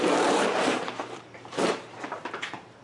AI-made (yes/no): yes